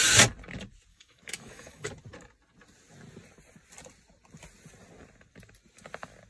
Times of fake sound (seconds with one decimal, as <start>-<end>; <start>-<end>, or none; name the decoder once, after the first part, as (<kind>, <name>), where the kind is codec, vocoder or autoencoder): 0.9-1.9 (codec, DAC)